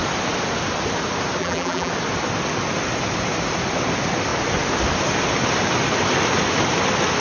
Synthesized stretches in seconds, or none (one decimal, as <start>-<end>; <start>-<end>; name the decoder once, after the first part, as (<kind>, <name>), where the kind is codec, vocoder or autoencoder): 1.4-1.9 (vocoder, BigVGAN v2)